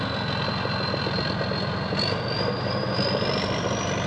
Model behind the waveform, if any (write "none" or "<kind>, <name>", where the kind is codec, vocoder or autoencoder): none